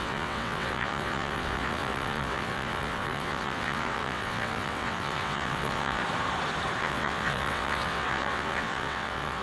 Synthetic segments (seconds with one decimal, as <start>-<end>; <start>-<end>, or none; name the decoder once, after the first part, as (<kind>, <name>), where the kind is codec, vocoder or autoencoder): 0.0-6.0 (vocoder, WaveNeXt); 6.8-9.4